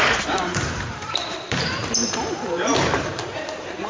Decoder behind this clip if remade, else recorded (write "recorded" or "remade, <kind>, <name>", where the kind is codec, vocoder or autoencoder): remade, vocoder, BigVGAN v2